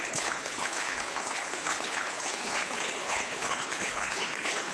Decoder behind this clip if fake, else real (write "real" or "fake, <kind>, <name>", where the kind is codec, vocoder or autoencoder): fake, codec, HILCodec